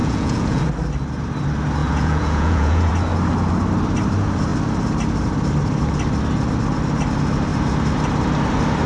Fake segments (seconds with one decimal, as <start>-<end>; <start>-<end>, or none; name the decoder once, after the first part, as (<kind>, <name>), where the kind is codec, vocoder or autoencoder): 0.0-0.6 (vocoder, Vocos); 1.8-2.9